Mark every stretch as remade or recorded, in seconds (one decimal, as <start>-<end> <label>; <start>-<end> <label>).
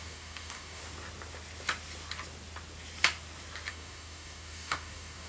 0.0-0.8 remade; 0.8-3.7 recorded; 3.7-5.3 remade